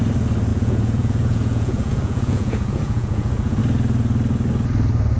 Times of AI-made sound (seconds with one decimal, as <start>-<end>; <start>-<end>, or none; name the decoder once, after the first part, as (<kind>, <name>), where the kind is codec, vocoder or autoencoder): 0.5-3.6 (vocoder, Vocos)